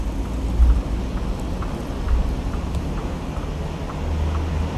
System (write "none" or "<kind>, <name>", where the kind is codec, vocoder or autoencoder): none